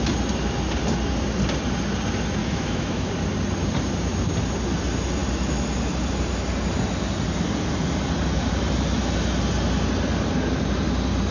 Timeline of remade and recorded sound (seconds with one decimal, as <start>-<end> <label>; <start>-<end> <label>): 0.0-2.4 recorded; 2.4-3.1 remade; 3.1-11.3 recorded